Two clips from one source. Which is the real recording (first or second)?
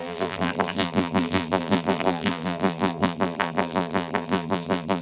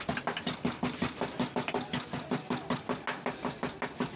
second